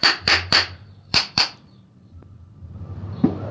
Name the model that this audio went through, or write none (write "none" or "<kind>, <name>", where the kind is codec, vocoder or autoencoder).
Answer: vocoder, BigVGAN v2